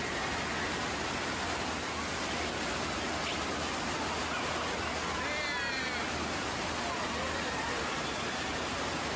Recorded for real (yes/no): yes